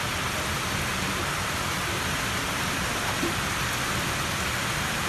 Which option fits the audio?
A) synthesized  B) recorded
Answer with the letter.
B